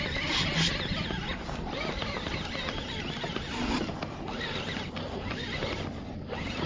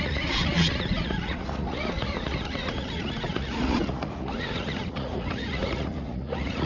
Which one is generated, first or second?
second